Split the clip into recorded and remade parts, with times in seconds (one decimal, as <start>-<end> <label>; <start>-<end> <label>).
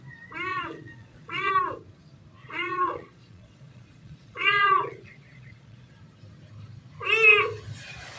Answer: 0.0-0.5 recorded; 0.5-1.5 remade; 1.5-2.4 recorded; 2.4-5.9 remade; 5.9-8.2 recorded